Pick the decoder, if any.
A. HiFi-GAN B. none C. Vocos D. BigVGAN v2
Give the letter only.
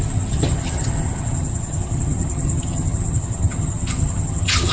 A